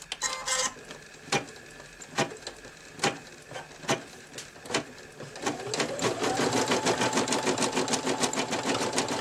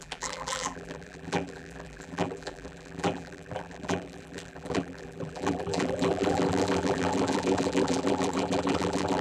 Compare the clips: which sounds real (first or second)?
first